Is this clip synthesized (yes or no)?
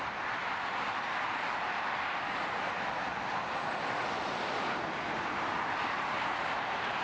no